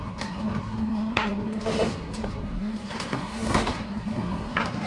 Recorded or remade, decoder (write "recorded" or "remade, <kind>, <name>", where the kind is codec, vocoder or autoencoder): remade, codec, SNAC